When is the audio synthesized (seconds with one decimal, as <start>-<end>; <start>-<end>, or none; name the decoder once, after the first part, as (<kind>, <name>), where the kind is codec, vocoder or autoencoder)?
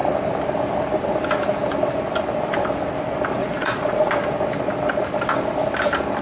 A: 3.4-4.1 (vocoder, Vocos)